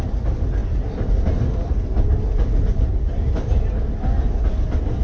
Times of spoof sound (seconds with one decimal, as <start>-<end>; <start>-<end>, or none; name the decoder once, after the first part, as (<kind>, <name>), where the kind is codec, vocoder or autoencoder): none